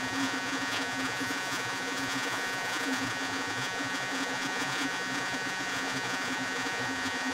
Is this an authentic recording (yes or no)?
no